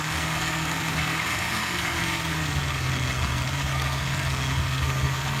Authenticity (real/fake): fake